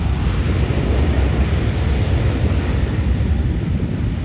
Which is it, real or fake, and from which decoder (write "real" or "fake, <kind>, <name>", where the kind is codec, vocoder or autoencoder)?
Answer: real